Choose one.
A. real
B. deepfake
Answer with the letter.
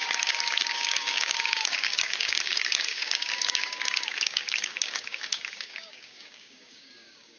B